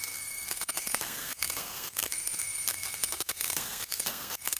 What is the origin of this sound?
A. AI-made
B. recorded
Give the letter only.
A